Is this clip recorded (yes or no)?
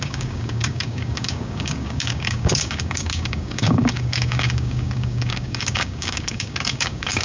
no